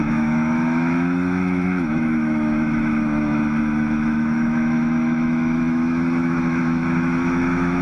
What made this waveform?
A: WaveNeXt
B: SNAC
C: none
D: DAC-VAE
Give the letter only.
D